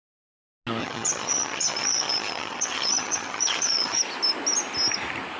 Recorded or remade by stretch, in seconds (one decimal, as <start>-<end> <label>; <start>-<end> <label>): 0.0-0.8 recorded; 0.8-4.0 remade; 4.0-5.4 recorded